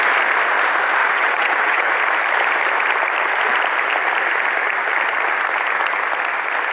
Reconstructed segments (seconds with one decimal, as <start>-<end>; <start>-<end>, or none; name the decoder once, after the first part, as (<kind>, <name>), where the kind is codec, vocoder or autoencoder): 1.0-1.9 (vocoder, WaveNeXt)